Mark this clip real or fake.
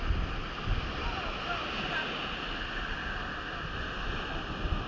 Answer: real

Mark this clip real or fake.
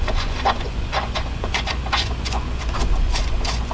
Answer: fake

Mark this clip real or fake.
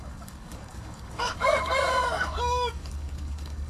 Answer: fake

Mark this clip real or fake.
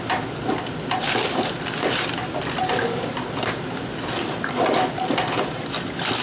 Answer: real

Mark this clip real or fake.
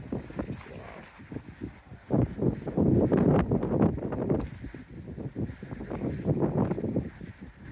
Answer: real